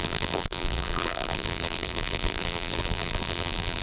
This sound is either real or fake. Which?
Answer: fake